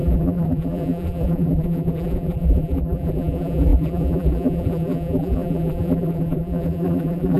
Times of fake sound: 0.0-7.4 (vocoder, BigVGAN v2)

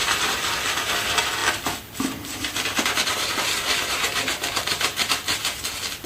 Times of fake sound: 1.4-5.1 (vocoder, BigVGAN v2)

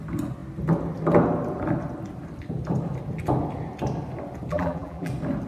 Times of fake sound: 4.5-5.1 (vocoder, BigVGAN v2)

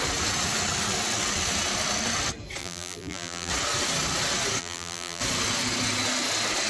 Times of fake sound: 2.6-3.5 (vocoder, BigVGAN v2); 4.6-5.2